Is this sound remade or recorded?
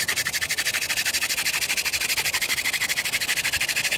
recorded